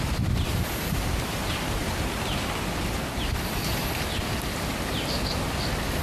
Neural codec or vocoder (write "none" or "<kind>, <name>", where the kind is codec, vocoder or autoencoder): none